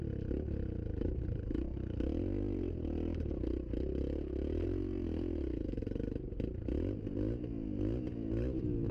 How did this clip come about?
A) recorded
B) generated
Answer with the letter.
A